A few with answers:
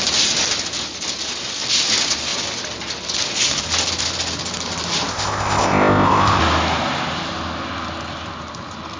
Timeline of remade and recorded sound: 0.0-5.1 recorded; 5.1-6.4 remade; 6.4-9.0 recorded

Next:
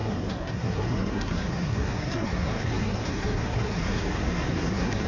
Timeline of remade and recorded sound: 0.0-5.1 remade

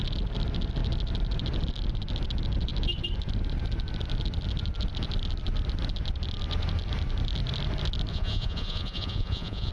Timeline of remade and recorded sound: 0.0-8.1 recorded; 8.1-9.7 remade

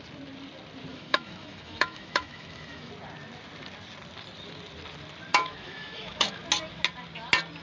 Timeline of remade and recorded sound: 0.0-0.9 recorded; 0.9-2.9 remade; 2.9-5.3 recorded; 5.3-6.4 remade; 6.4-7.6 recorded

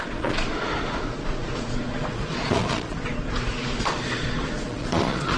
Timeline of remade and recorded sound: 0.0-5.4 remade